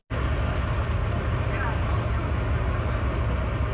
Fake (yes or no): no